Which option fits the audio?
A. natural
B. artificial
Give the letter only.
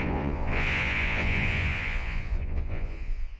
B